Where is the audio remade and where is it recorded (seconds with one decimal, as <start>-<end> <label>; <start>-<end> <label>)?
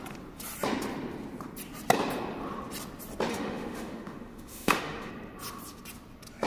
0.0-3.3 recorded; 3.3-5.1 remade; 5.1-6.5 recorded